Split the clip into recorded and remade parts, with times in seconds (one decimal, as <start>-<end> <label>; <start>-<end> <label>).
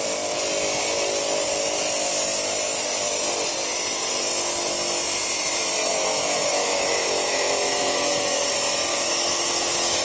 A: 0.0-5.9 recorded; 5.9-8.5 remade; 8.5-8.9 recorded; 8.9-10.0 remade